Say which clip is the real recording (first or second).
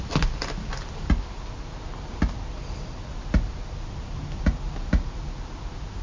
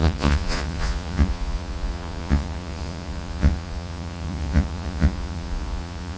first